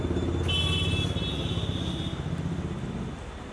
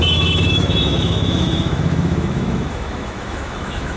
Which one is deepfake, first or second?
second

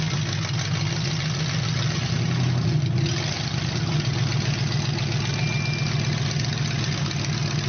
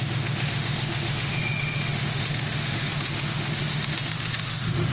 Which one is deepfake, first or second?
second